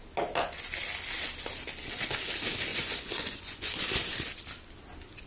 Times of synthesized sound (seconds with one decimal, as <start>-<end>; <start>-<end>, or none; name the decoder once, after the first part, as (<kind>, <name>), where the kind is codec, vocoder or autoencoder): 2.7-3.8 (vocoder, Vocos)